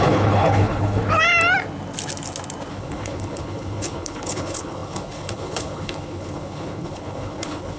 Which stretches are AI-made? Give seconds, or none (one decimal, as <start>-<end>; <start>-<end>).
0.0-1.0; 2.7-7.8